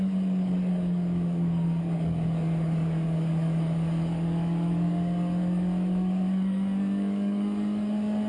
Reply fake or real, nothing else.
fake